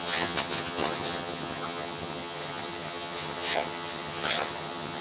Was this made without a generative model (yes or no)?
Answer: no